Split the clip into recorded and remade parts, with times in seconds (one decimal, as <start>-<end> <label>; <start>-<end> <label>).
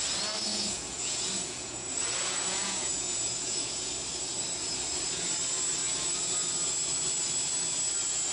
0.0-0.5 recorded; 0.5-3.9 remade; 3.9-8.3 recorded